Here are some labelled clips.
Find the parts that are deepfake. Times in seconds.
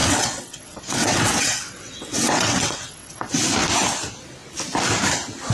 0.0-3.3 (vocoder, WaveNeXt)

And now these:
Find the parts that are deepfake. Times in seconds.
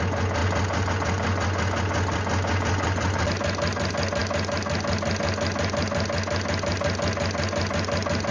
none